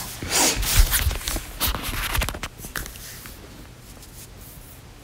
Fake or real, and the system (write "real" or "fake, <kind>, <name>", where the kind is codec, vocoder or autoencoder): real